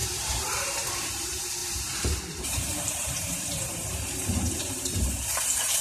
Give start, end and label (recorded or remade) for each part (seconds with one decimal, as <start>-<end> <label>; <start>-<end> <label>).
0.0-0.9 remade; 0.9-1.6 recorded; 1.6-5.1 remade; 5.1-5.8 recorded